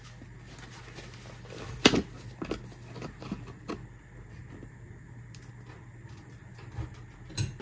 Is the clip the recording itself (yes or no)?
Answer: yes